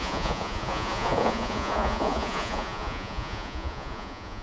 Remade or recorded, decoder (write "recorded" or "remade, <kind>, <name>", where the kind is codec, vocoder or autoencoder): remade, vocoder, Vocos